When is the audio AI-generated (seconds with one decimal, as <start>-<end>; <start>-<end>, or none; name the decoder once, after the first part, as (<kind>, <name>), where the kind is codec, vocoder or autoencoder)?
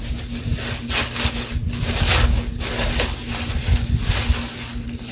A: none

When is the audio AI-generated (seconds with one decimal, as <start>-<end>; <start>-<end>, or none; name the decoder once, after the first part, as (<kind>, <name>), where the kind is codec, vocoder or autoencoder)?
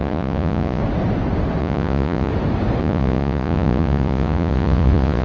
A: 0.0-0.8 (vocoder, Vocos); 1.6-2.3; 2.8-5.2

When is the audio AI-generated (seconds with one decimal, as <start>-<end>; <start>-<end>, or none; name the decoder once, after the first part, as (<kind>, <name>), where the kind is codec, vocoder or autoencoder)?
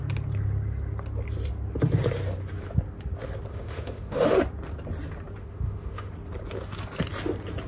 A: 3.5-4.4 (autoencoder, DAC-VAE); 5.4-6.1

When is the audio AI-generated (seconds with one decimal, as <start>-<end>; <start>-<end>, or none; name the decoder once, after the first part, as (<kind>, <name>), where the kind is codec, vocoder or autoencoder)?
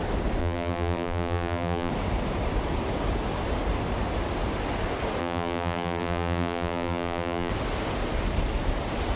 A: 0.4-1.9 (vocoder, BigVGAN v2); 5.2-7.5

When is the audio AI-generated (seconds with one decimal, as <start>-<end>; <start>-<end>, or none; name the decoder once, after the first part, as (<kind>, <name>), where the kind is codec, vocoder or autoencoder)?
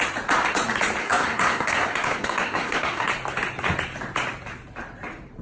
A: 1.0-3.1 (codec, SNAC)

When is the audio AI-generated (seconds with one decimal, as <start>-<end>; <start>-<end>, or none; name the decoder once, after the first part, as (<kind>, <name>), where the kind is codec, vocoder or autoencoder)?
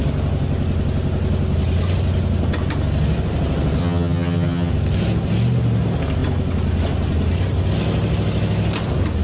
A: 3.8-4.7 (vocoder, HiFi-GAN)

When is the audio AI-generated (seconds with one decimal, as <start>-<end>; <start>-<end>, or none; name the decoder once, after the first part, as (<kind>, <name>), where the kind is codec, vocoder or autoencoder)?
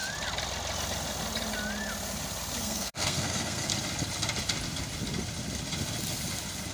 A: 2.6-3.7 (codec, SNAC)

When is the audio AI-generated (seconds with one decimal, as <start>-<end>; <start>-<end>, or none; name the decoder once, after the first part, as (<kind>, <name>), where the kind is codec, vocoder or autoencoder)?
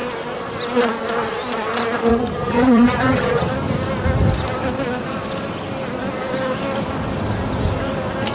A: 2.1-3.5 (vocoder, HiFi-GAN)